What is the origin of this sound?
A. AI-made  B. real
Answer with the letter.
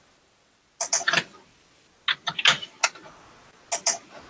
B